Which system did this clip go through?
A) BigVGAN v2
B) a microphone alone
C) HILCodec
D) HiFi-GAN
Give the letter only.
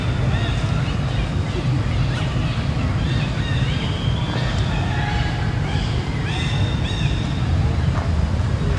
B